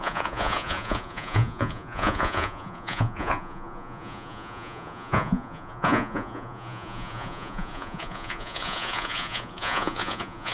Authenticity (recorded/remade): remade